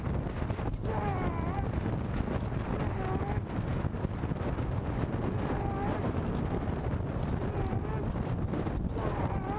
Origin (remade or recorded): recorded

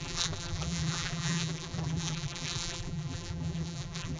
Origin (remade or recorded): remade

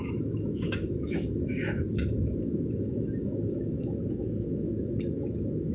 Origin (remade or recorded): remade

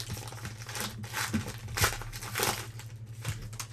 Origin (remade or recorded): recorded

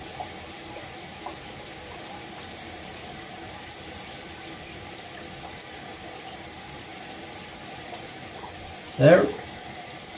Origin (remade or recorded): remade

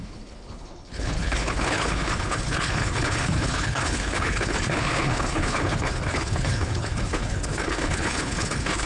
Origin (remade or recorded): remade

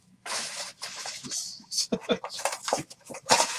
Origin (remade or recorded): remade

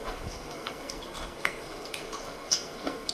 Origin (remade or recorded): remade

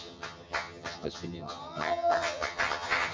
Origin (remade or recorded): remade